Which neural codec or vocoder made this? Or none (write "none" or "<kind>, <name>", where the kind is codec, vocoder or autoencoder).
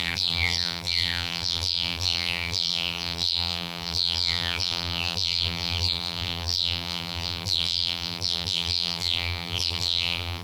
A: vocoder, BigVGAN v2